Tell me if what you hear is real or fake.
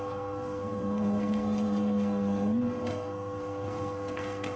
fake